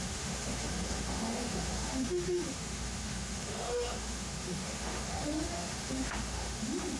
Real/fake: fake